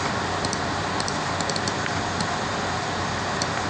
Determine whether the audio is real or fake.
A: real